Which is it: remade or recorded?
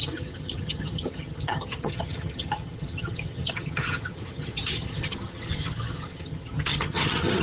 remade